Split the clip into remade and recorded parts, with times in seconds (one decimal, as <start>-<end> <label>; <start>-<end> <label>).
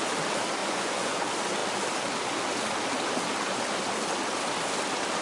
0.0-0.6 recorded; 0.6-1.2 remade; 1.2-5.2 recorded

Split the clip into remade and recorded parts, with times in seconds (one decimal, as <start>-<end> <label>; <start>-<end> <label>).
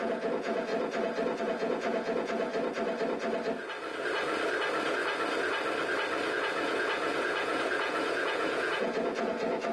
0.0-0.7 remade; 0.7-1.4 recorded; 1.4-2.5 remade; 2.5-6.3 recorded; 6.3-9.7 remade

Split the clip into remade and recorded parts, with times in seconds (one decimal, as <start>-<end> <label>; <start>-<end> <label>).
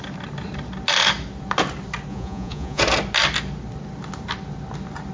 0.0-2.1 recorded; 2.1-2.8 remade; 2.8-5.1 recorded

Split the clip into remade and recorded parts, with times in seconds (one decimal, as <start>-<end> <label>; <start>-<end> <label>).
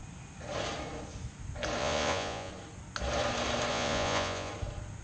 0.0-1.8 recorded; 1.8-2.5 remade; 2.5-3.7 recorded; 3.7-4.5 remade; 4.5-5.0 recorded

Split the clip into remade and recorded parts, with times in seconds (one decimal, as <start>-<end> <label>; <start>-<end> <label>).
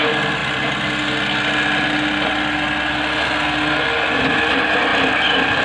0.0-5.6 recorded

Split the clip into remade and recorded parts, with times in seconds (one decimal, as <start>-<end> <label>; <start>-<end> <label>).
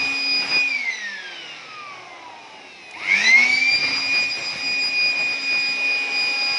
0.0-6.6 recorded